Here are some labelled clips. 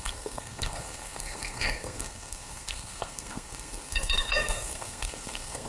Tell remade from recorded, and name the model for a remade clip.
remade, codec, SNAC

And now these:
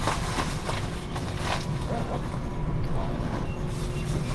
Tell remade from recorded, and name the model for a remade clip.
recorded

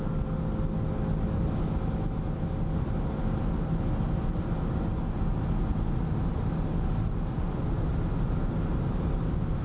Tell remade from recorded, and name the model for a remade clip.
recorded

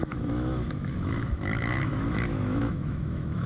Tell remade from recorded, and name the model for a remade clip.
remade, autoencoder, DAC-VAE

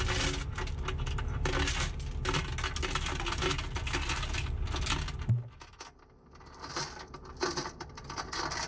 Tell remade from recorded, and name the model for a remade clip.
recorded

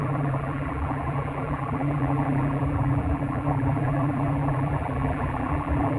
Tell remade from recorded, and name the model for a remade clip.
remade, vocoder, BigVGAN v2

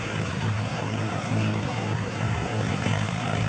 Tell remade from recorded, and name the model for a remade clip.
remade, codec, SNAC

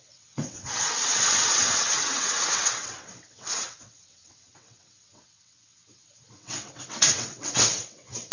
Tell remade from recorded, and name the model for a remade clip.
remade, vocoder, WaveNeXt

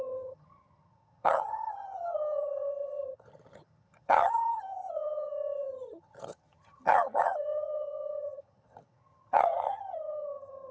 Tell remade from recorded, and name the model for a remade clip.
remade, vocoder, HiFi-GAN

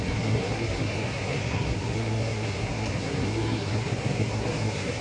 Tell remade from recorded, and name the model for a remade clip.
remade, codec, SNAC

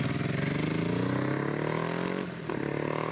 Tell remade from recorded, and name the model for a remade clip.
recorded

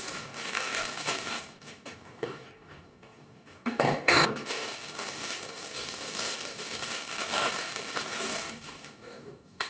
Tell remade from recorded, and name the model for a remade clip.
remade, codec, DAC